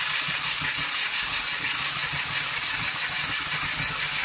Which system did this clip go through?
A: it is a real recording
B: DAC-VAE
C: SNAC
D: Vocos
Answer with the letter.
A